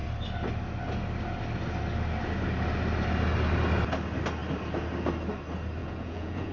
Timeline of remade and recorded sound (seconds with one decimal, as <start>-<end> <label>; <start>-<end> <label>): 0.0-5.8 recorded; 5.8-6.5 remade